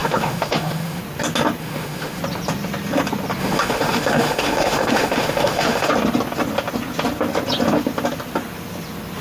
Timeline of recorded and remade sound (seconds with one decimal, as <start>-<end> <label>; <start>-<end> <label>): 0.0-1.0 remade; 1.0-1.6 recorded; 1.6-2.2 remade; 2.2-3.4 recorded; 3.4-5.9 remade; 5.9-9.2 recorded